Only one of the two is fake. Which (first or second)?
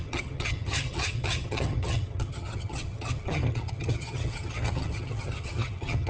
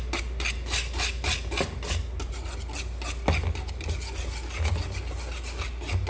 first